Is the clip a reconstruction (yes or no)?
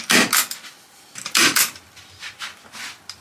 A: no